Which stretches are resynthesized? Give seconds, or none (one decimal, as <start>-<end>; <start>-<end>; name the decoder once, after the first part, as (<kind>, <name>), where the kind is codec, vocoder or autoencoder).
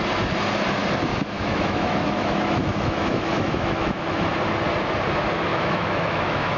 1.1-4.3 (autoencoder, DAC-VAE); 5.5-6.6